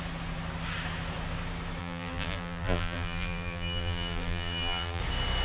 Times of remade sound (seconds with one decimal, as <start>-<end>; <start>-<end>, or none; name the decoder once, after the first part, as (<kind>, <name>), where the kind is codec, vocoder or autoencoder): 1.8-5.0 (vocoder, BigVGAN v2)